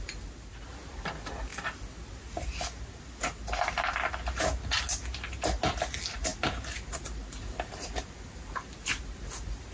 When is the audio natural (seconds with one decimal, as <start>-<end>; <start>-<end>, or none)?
0.0-9.7